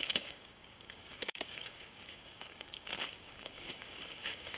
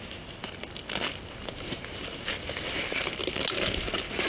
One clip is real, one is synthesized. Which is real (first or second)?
second